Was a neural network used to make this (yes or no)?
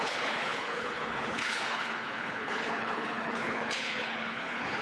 yes